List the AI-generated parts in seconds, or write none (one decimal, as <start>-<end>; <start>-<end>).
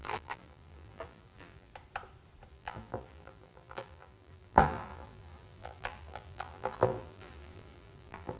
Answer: 0.0-1.7; 2.5-8.4